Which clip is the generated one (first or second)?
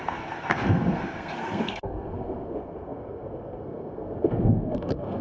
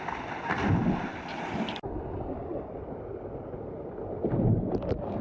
first